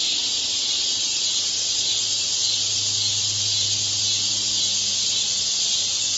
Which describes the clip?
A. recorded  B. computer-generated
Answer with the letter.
A